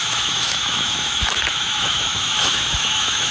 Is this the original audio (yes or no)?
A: no